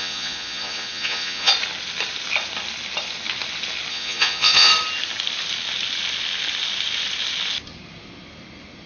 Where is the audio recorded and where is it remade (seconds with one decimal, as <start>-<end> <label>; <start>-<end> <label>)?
0.0-1.5 remade; 1.5-3.9 recorded; 3.9-4.7 remade; 4.7-8.9 recorded